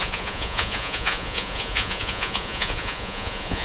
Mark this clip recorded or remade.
remade